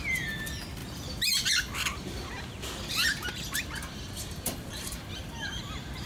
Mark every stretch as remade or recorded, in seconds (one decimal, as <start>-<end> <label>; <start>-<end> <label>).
0.0-1.9 recorded; 1.9-5.6 remade; 5.6-6.1 recorded